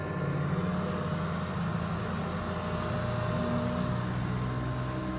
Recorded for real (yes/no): yes